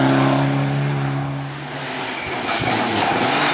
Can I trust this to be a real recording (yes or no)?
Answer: yes